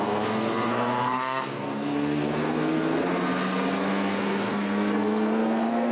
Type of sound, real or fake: fake